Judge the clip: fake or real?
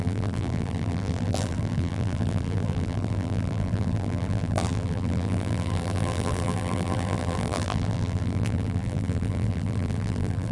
fake